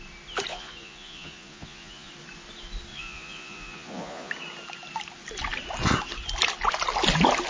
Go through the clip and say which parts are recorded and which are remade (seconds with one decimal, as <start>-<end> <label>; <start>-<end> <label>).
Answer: 0.0-0.5 recorded; 0.5-2.1 remade; 2.1-2.9 recorded; 2.9-4.3 remade; 4.3-7.5 recorded